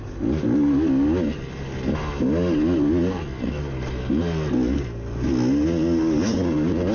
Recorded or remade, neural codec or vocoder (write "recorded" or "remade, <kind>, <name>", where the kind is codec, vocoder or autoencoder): recorded